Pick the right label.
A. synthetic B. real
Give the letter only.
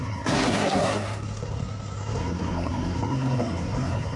A